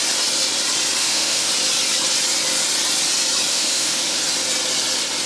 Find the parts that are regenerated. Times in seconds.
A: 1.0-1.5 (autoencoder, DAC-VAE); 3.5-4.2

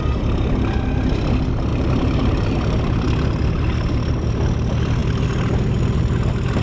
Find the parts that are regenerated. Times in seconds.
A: 1.7-2.8 (vocoder, BigVGAN v2)

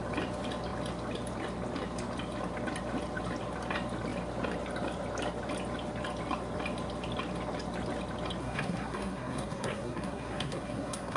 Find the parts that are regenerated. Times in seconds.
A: 8.4-11.2 (codec, SNAC)

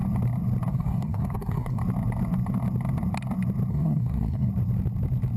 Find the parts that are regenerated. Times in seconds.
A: 0.7-1.8 (codec, SNAC); 3.7-4.5

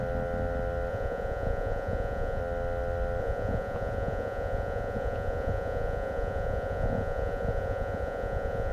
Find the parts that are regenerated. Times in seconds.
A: 0.9-2.4 (vocoder, Vocos); 3.2-8.7

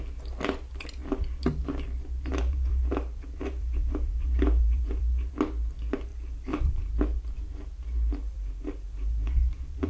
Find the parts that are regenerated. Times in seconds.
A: 2.3-5.3 (vocoder, BigVGAN v2); 6.1-6.8; 8.2-9.9

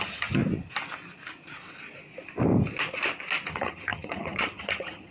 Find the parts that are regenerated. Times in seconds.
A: 0.0-0.4 (vocoder, HiFi-GAN); 3.5-5.1

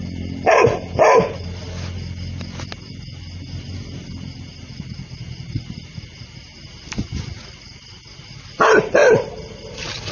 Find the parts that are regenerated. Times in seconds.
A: none